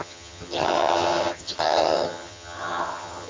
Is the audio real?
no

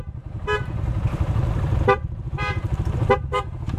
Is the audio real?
no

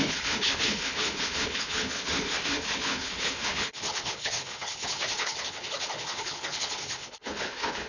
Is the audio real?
no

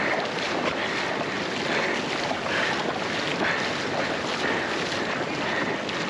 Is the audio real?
yes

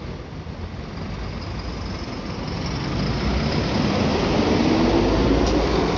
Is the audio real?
yes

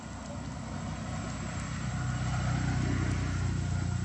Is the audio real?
yes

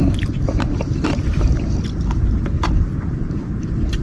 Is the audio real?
no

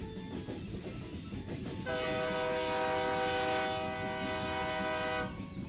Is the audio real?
yes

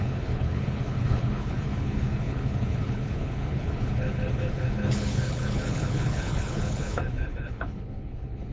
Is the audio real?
no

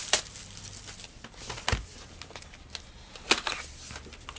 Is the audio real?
yes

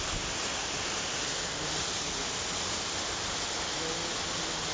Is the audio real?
yes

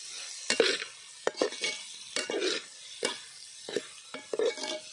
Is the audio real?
yes